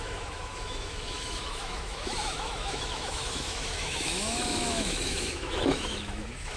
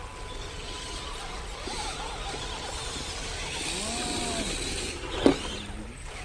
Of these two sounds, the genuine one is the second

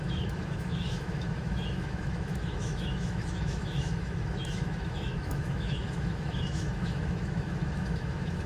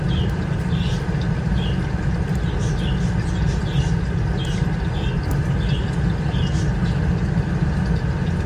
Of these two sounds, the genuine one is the second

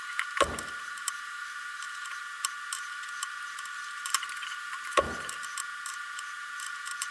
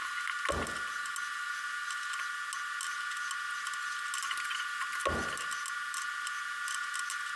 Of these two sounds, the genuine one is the second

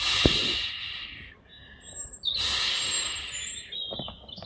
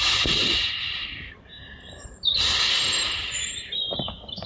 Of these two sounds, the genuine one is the first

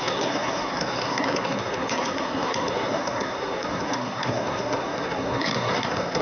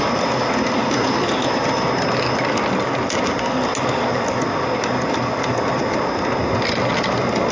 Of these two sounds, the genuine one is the second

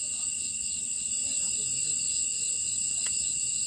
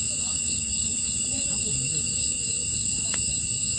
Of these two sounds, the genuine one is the first